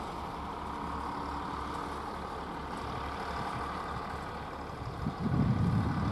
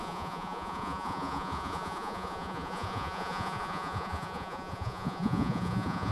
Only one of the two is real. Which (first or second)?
first